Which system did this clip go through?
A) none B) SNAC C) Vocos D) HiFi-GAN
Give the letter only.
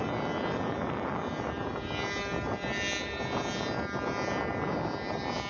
A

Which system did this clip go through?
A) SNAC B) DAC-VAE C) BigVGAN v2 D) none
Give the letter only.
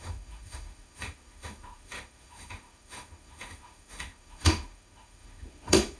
B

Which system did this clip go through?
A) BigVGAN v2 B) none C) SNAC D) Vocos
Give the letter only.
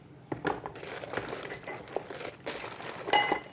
B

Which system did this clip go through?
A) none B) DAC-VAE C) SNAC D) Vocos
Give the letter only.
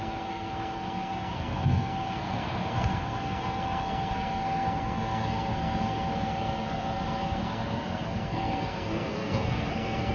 C